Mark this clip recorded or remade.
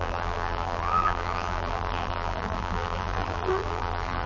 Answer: remade